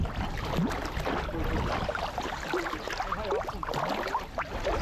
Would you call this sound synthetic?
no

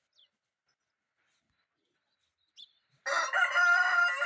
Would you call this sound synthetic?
no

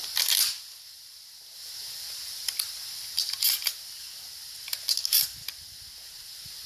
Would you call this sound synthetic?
no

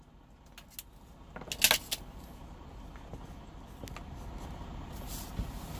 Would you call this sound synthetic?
no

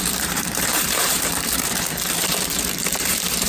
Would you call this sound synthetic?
yes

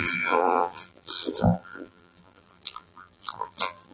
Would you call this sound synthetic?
yes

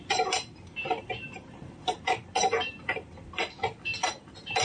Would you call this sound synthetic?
yes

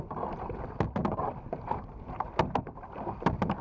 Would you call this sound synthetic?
no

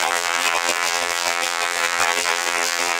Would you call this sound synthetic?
yes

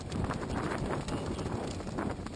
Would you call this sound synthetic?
no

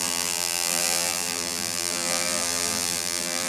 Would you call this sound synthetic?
yes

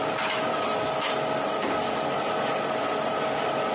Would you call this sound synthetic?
no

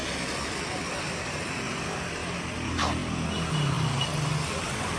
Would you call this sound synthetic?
no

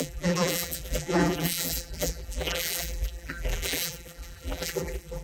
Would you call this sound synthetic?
yes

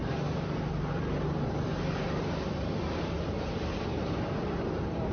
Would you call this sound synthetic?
no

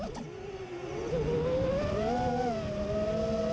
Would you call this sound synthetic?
no